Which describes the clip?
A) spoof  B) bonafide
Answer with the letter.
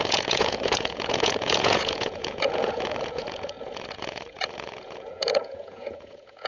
A